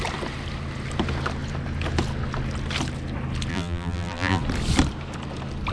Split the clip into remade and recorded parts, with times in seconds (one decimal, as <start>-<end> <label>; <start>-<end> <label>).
0.0-3.5 recorded; 3.5-4.4 remade; 4.4-5.7 recorded